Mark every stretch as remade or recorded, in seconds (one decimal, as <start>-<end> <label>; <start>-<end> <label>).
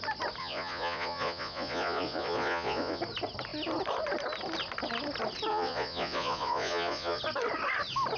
0.0-0.4 recorded; 0.4-3.0 remade; 3.0-5.5 recorded; 5.5-7.2 remade; 7.2-8.2 recorded